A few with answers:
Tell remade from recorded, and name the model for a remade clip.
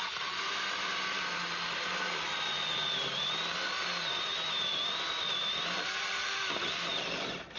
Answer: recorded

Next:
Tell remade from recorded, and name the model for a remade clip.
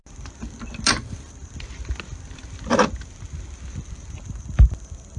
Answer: recorded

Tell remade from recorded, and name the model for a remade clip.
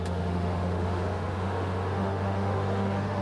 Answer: remade, autoencoder, DAC-VAE